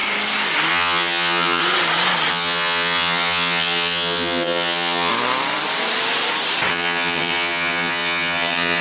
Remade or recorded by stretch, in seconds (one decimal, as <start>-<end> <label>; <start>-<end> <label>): 0.0-0.7 recorded; 0.7-1.6 remade; 1.6-2.3 recorded; 2.3-5.1 remade; 5.1-6.7 recorded; 6.7-8.8 remade